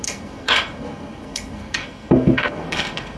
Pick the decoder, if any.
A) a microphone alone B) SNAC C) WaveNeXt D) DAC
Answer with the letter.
B